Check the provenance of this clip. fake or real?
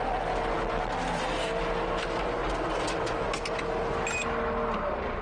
real